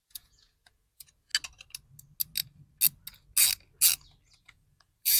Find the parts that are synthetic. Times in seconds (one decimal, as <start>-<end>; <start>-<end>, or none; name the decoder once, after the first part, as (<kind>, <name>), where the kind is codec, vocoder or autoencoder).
0.0-1.3 (vocoder, Vocos); 4.4-5.2